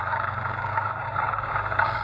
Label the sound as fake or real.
fake